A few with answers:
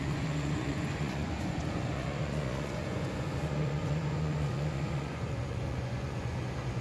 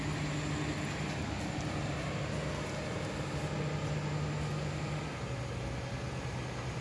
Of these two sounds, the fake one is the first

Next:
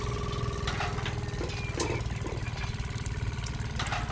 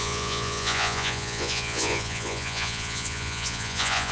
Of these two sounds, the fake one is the second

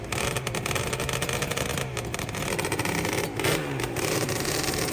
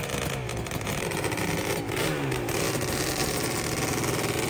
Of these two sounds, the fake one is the first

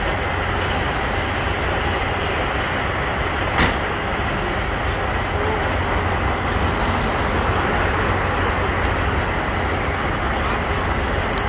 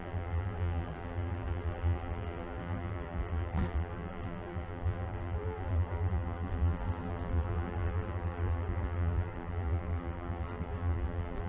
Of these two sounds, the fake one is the second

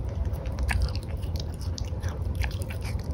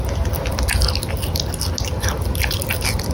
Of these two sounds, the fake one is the first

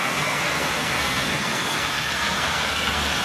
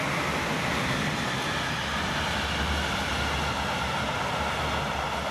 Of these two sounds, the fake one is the first